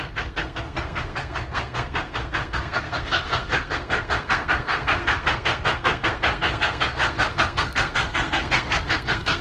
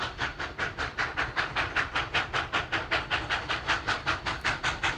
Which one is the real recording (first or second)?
second